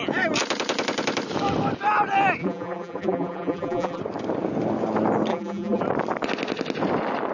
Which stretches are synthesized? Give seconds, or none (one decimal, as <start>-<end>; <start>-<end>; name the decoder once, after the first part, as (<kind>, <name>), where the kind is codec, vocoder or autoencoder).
2.4-4.0 (vocoder, BigVGAN v2); 5.3-5.8